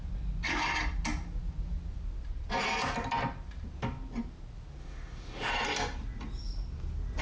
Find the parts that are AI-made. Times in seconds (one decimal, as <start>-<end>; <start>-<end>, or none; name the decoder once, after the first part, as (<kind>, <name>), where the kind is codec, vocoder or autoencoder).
4.8-5.5 (autoencoder, DAC-VAE)